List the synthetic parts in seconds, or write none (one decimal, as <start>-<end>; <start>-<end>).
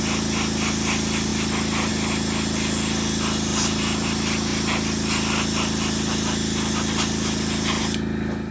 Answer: 3.5-4.1